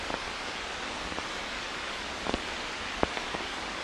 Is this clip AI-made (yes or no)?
yes